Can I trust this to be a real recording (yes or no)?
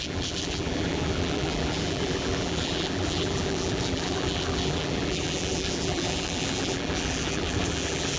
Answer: no